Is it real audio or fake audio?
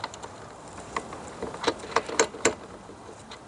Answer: real